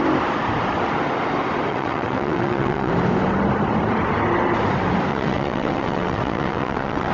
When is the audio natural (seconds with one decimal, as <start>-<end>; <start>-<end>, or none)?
0.0-1.7; 2.9-5.1